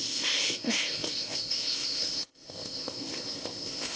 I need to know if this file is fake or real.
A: fake